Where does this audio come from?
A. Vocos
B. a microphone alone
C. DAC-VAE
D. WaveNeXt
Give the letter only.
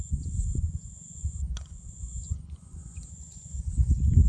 A